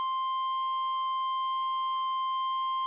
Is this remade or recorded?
recorded